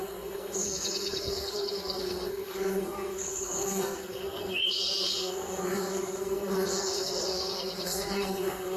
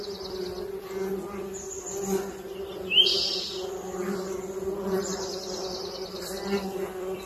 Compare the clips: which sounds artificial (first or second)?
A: first